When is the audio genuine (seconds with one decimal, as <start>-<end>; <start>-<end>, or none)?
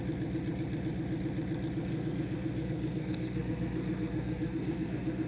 0.0-1.9